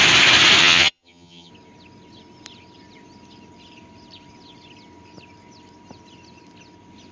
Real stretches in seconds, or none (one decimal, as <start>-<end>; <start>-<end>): 0.0-0.6; 1.5-7.1

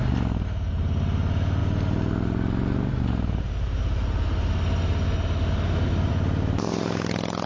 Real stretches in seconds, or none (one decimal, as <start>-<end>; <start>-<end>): 0.0-7.5

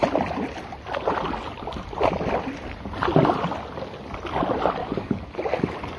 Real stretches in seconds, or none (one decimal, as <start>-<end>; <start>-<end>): 0.0-4.8; 5.4-6.0

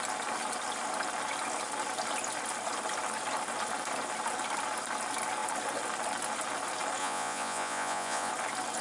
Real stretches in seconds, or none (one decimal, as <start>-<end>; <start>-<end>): 0.0-7.0; 8.3-8.8

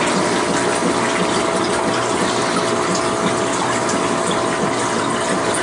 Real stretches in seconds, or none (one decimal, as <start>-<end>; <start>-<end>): 0.0-5.6

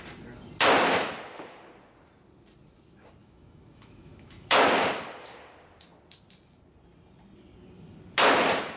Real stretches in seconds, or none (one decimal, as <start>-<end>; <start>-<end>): 0.0-3.2; 4.7-8.8